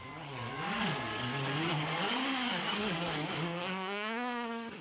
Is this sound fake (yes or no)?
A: yes